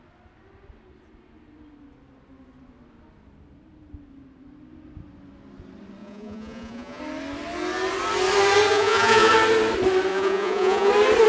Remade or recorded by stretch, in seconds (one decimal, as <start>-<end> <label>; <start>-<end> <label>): 0.0-6.0 recorded; 6.0-7.0 remade; 7.0-8.7 recorded; 8.7-9.3 remade; 9.3-10.1 recorded; 10.1-10.9 remade; 10.9-11.3 recorded